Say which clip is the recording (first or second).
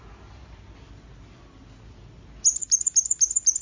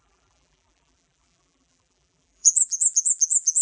first